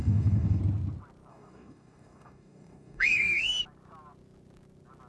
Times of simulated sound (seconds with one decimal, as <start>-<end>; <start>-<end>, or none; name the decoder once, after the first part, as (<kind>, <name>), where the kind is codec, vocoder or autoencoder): 0.0-0.6 (codec, DAC); 1.3-3.6